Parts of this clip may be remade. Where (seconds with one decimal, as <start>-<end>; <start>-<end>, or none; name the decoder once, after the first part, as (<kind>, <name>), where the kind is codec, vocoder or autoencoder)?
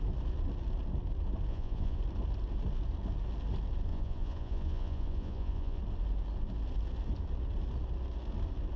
1.5-2.0 (vocoder, Vocos); 3.9-5.8